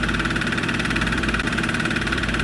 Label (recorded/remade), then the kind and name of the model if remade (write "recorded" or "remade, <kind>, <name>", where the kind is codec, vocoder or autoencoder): remade, vocoder, BigVGAN v2